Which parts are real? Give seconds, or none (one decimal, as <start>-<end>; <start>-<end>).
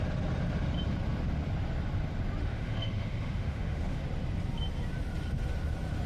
0.0-2.4; 4.0-6.1